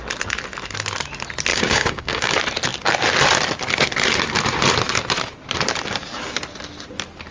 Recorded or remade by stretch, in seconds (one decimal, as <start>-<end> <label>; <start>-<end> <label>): 0.0-1.5 recorded; 1.5-2.3 remade; 2.3-7.3 recorded